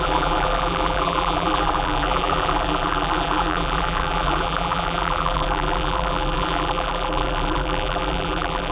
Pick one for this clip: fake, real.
fake